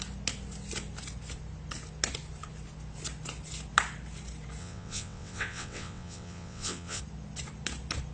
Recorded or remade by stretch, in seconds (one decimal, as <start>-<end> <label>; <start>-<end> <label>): 0.0-4.6 recorded; 4.6-7.0 remade; 7.0-8.1 recorded